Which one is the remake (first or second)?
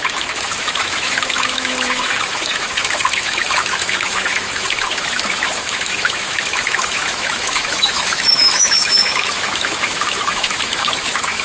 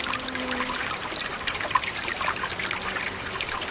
first